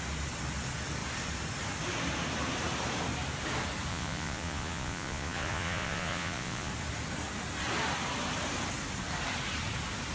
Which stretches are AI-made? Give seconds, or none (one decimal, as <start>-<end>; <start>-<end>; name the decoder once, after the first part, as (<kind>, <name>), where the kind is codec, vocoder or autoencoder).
3.9-6.7 (vocoder, Vocos)